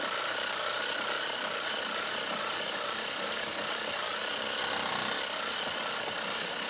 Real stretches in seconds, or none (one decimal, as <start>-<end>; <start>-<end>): 0.0-6.7